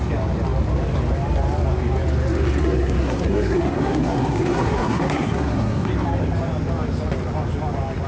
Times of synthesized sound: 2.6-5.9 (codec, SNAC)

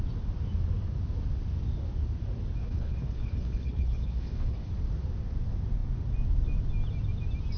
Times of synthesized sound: 2.6-4.7 (codec, HILCodec)

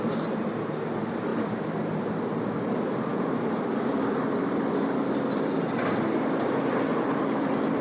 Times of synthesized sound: none

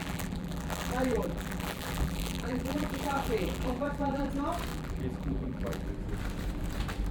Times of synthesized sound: 0.0-4.3 (vocoder, BigVGAN v2); 4.7-5.9

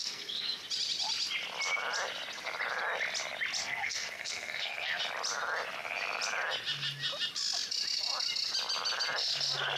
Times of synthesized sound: 0.0-0.6 (codec, SNAC); 3.6-5.0

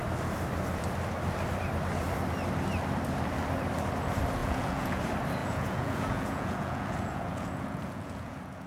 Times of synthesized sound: 4.4-5.0 (vocoder, Vocos); 5.4-8.7